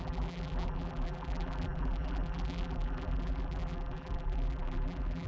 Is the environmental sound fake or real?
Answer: fake